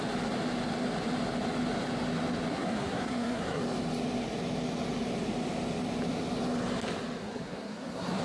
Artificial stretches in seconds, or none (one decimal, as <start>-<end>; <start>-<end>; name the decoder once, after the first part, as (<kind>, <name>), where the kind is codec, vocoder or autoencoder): 2.5-3.6 (codec, SNAC); 7.2-8.2